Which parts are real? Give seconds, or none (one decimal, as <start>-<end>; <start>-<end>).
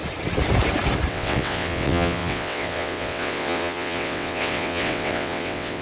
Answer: 0.0-1.1